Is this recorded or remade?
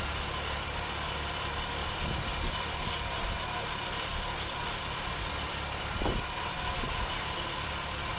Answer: remade